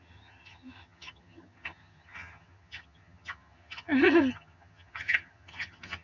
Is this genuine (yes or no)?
no